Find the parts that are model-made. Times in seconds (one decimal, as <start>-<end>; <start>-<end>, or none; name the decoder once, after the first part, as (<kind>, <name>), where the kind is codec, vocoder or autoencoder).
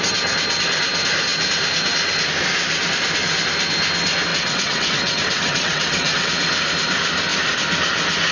4.3-6.3 (vocoder, WaveNeXt)